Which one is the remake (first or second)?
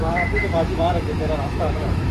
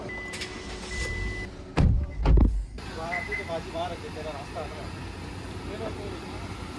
first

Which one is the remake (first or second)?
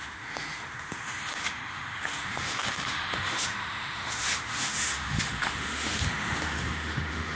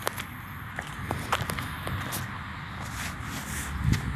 first